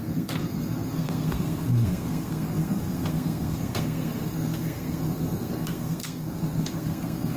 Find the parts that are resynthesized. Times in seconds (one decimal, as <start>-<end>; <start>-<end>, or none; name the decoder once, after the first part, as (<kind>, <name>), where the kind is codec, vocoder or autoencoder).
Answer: 0.0-7.4 (codec, SNAC)